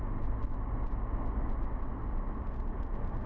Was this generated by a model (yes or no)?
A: no